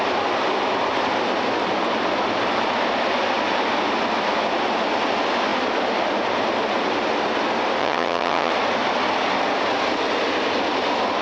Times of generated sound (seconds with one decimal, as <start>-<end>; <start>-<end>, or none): 7.8-8.5